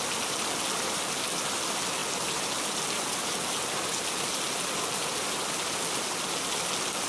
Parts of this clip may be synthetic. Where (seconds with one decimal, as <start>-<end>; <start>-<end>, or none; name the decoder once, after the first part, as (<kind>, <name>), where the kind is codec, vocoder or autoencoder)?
none